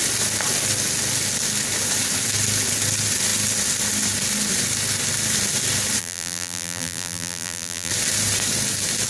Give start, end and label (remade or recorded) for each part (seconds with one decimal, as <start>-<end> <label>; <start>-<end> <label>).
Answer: 0.0-6.0 recorded; 6.0-7.9 remade; 7.9-9.1 recorded